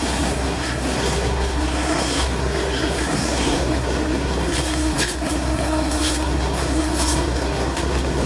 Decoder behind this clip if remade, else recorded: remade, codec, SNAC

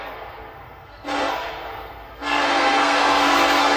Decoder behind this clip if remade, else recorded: remade, codec, SNAC